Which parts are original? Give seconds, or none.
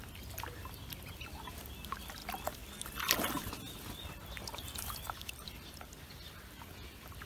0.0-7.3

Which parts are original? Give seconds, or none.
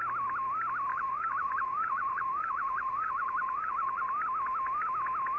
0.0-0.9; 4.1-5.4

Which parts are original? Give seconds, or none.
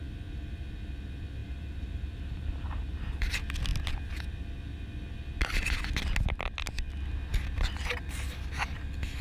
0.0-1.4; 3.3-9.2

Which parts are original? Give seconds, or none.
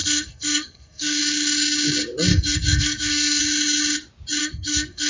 1.2-2.3; 3.4-4.4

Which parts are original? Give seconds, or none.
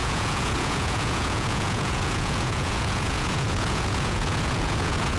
none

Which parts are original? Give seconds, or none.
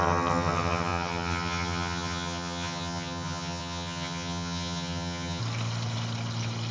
5.4-6.7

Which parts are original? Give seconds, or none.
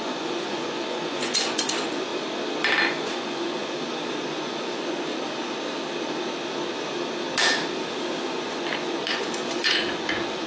2.1-2.8; 3.6-4.3; 5.1-8.2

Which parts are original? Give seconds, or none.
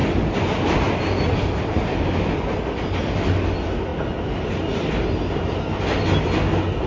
2.3-6.9